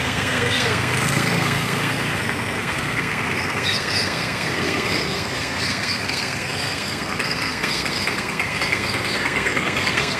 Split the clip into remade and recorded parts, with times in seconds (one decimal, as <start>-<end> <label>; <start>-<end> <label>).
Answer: 0.0-10.2 remade